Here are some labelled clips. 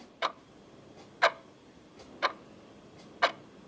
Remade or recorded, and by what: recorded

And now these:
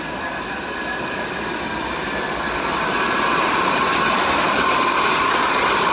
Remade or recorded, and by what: recorded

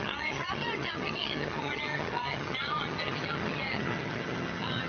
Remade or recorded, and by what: remade, vocoder, HiFi-GAN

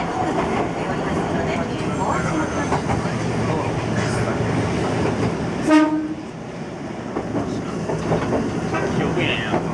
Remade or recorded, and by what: recorded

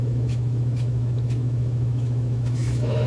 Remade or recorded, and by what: remade, autoencoder, DAC-VAE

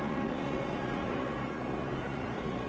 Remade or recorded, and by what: remade, vocoder, Vocos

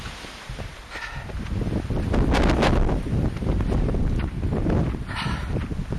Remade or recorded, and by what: recorded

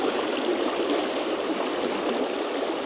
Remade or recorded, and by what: recorded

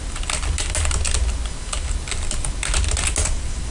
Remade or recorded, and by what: recorded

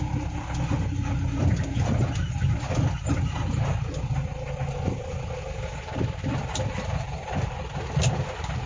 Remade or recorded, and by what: recorded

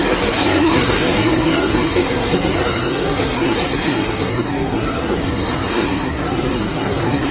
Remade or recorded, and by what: remade, codec, SNAC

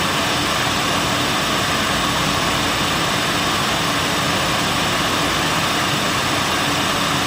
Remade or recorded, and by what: recorded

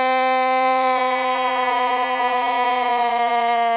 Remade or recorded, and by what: remade, vocoder, Vocos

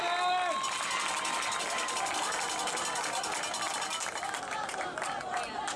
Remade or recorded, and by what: recorded